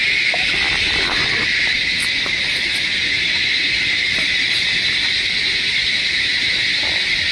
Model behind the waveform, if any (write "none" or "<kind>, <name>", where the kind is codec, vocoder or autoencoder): none